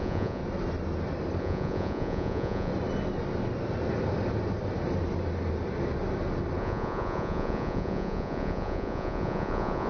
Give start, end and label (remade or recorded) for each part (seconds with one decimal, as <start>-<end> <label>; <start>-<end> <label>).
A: 0.0-0.4 remade; 0.4-1.4 recorded; 1.4-2.7 remade; 2.7-6.6 recorded; 6.6-9.9 remade